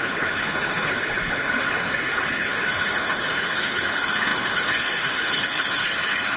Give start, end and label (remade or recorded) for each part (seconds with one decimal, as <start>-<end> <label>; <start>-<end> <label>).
0.0-6.4 remade